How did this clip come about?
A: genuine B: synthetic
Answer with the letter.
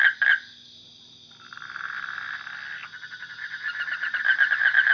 A